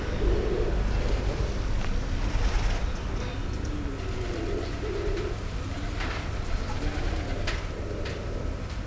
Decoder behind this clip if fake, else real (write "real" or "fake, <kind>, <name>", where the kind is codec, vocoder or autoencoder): real